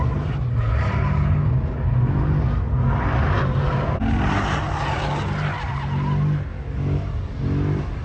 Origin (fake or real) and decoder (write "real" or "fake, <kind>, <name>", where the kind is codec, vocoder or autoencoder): real